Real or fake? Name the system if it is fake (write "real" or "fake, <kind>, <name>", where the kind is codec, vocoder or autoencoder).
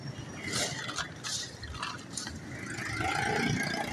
real